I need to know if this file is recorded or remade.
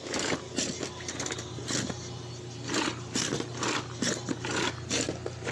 recorded